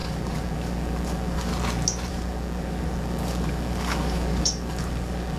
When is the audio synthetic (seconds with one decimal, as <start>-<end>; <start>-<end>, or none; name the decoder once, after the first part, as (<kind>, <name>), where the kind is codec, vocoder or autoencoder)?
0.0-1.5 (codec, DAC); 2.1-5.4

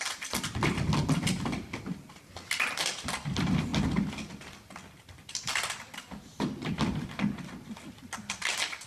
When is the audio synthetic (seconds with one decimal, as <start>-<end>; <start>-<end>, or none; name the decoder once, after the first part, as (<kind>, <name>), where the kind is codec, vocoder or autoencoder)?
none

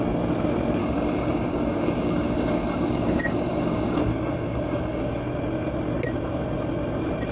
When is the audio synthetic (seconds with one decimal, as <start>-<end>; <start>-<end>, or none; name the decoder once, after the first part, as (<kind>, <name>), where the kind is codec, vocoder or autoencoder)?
0.8-5.2 (codec, DAC)

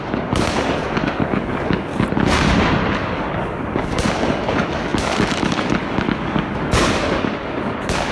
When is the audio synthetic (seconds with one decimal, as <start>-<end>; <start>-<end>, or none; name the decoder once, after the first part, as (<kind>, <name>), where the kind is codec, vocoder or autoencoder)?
0.0-1.9 (codec, DAC); 2.9-8.1